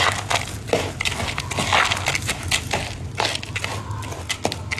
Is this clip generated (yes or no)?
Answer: no